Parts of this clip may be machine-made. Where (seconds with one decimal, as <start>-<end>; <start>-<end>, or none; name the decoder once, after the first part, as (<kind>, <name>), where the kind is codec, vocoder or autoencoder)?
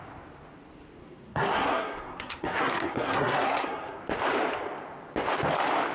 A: 1.0-4.0 (codec, SNAC)